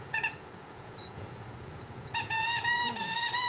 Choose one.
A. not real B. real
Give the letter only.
A